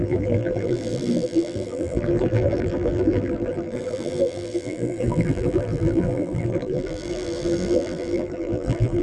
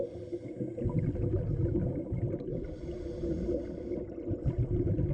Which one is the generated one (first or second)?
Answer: first